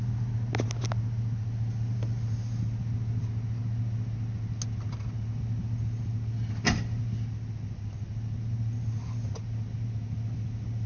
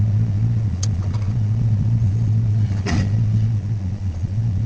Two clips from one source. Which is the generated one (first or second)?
second